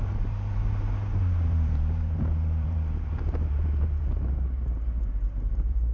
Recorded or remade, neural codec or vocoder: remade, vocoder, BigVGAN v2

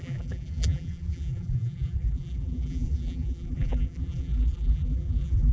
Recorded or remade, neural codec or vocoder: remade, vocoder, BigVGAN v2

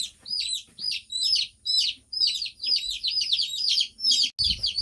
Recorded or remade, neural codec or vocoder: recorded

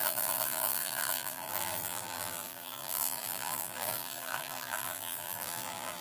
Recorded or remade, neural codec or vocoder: remade, vocoder, BigVGAN v2